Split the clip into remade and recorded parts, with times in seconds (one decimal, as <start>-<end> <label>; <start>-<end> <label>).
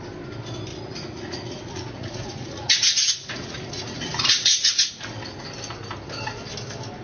0.0-0.7 recorded; 0.7-4.9 remade; 4.9-7.0 recorded